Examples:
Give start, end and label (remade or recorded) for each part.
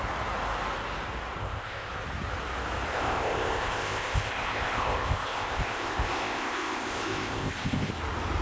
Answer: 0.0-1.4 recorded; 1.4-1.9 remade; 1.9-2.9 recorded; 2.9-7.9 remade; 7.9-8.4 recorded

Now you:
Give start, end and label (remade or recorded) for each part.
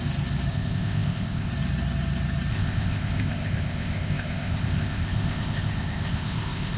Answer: 0.0-0.5 recorded; 0.5-1.5 remade; 1.5-2.5 recorded; 2.5-6.8 remade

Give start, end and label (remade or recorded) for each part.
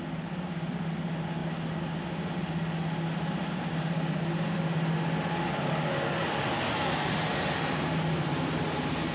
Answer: 0.0-9.1 recorded